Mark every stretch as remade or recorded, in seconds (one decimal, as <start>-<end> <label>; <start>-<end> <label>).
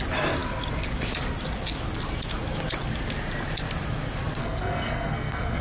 0.0-4.4 recorded; 4.4-5.6 remade